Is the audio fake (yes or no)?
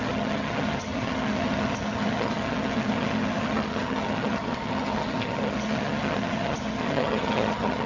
yes